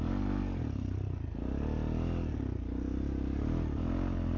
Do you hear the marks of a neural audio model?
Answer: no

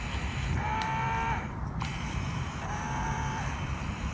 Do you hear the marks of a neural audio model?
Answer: yes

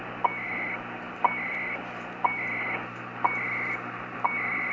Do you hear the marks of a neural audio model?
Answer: no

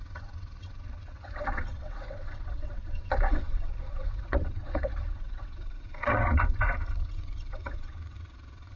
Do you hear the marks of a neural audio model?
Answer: yes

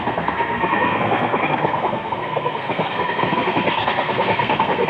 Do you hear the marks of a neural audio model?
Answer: yes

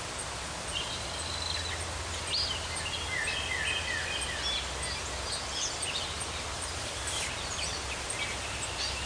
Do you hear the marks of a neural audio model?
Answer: no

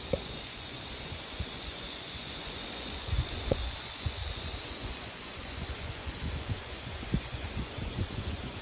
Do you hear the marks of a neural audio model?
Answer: yes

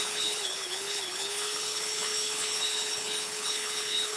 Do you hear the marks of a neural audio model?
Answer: yes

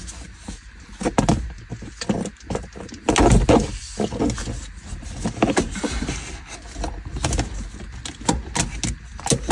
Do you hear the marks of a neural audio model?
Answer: no